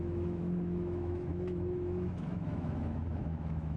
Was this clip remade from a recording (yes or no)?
yes